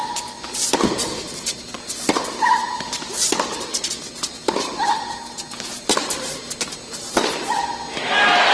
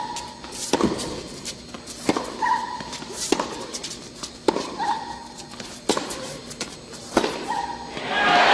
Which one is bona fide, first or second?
first